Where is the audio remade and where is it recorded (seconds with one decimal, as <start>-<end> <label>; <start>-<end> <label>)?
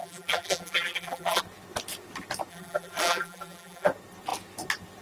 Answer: 0.0-1.4 remade; 1.4-2.5 recorded; 2.5-3.9 remade; 3.9-5.0 recorded